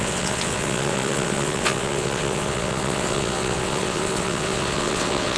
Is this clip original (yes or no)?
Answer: no